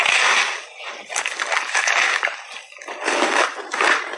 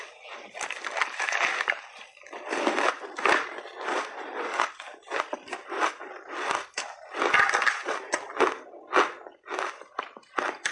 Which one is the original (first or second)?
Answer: first